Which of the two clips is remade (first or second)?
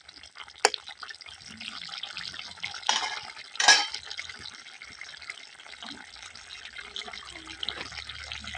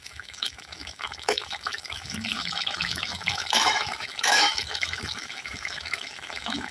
second